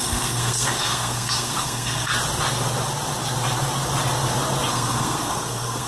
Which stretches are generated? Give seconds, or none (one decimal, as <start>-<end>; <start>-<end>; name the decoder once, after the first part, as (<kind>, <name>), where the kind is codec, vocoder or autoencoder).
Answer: 0.0-2.1 (codec, SNAC); 4.7-5.9